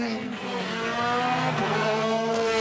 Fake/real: fake